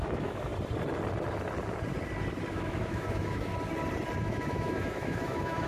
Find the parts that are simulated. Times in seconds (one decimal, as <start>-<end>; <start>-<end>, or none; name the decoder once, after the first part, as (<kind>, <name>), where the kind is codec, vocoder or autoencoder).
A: 0.0-0.5 (autoencoder, DAC-VAE); 2.5-3.5; 4.2-5.7